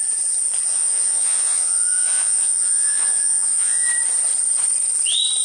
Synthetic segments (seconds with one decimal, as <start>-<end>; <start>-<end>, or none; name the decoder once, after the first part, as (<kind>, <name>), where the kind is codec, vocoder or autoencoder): 0.7-3.9 (vocoder, Vocos)